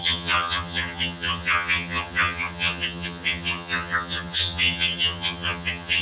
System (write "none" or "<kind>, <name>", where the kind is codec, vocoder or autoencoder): vocoder, HiFi-GAN